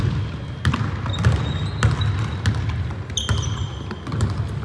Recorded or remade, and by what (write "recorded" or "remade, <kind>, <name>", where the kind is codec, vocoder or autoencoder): recorded